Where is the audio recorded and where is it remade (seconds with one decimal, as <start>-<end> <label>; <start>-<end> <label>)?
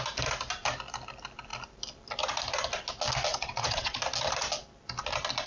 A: 0.0-3.3 recorded; 3.3-4.0 remade; 4.0-5.5 recorded